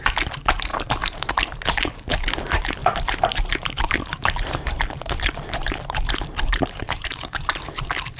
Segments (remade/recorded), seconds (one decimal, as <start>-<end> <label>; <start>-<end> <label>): 0.0-0.7 recorded; 0.7-1.3 remade; 1.3-2.8 recorded; 2.8-7.7 remade; 7.7-8.2 recorded